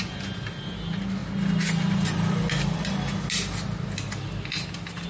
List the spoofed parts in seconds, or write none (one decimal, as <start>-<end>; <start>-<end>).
none